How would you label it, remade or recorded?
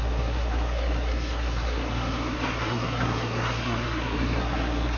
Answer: remade